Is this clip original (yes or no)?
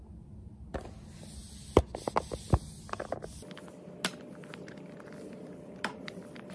yes